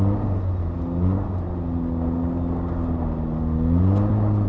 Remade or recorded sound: recorded